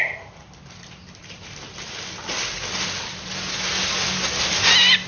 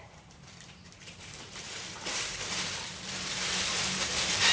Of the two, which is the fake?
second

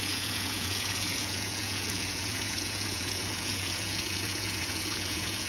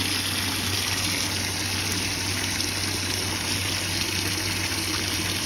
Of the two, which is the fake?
first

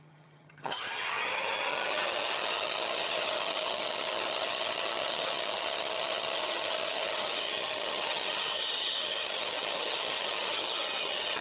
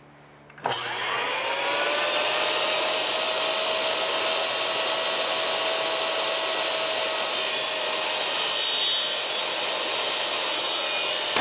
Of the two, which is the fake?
first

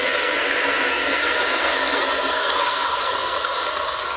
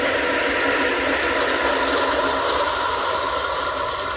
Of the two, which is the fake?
first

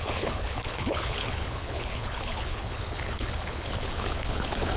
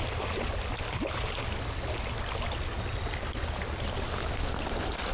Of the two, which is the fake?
first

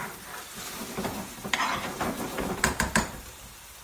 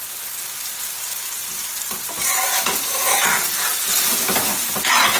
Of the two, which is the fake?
first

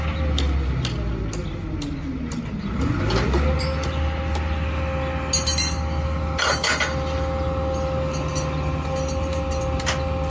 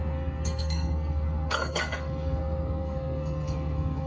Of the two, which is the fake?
second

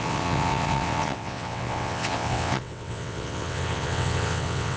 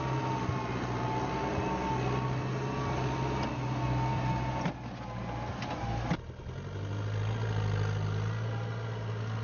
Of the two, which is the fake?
first